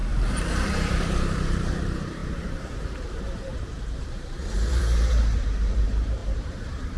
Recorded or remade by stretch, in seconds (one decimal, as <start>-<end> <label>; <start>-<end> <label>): 0.0-7.0 remade